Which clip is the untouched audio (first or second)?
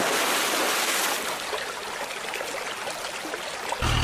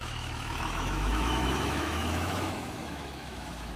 first